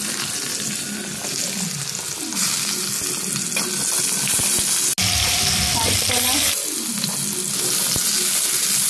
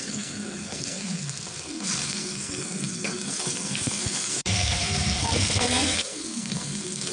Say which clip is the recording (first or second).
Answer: first